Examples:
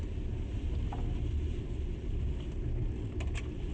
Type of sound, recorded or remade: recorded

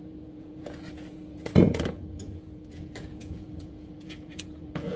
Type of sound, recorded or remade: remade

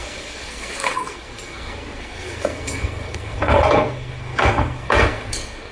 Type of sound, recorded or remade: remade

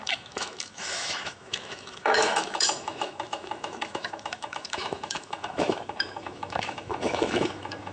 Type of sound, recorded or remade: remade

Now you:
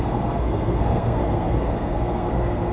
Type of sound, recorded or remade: remade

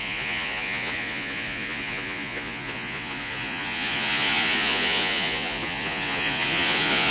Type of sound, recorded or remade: remade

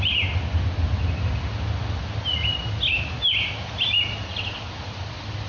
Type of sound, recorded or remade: recorded